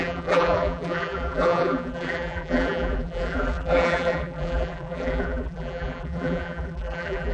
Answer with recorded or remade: remade